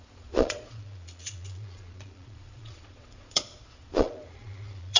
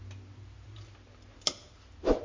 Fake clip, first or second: first